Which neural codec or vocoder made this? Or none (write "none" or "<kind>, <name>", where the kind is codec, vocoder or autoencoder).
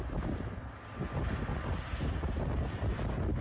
none